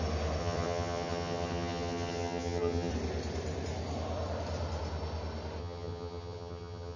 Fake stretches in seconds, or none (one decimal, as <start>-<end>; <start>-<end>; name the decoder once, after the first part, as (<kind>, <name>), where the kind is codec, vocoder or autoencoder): 0.4-2.9 (vocoder, HiFi-GAN); 5.6-7.0